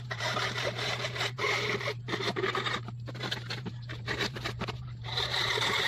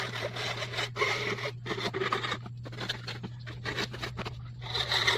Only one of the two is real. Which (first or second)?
second